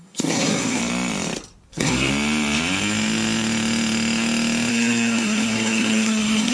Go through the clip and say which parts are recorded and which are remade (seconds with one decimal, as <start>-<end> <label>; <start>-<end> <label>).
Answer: 0.0-0.8 remade; 0.8-1.7 recorded; 1.7-2.1 remade; 2.1-4.7 recorded; 4.7-6.5 remade